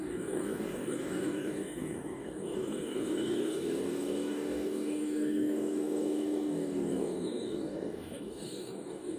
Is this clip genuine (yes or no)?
no